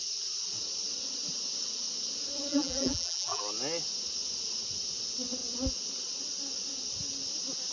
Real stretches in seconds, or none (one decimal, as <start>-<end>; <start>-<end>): 0.0-2.5; 3.4-7.7